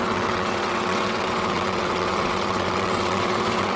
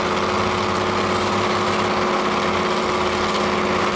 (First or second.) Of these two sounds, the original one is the second